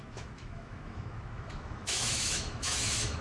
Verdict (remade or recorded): remade